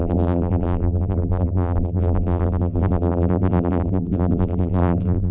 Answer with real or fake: fake